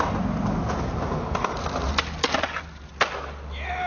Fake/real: real